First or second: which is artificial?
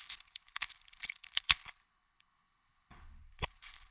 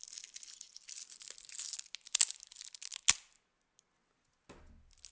first